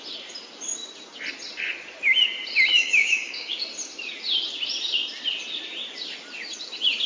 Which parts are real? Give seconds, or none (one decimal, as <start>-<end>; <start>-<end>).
0.0-2.7; 3.6-7.1